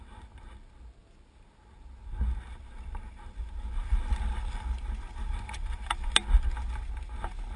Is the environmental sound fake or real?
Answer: real